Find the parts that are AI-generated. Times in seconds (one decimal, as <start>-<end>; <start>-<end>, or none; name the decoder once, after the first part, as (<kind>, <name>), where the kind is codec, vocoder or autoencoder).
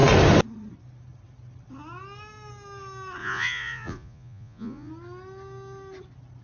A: 3.2-4.9 (vocoder, Vocos)